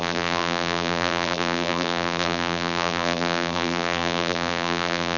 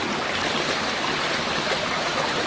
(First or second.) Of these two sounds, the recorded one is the second